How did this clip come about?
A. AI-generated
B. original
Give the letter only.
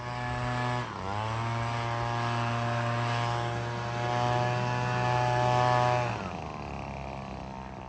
B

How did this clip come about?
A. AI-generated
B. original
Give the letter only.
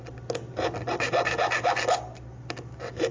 B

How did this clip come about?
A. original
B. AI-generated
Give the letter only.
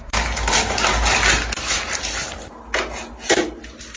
A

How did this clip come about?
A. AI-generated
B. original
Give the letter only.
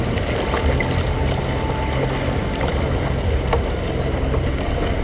B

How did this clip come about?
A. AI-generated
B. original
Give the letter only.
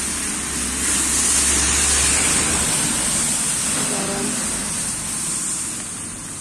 B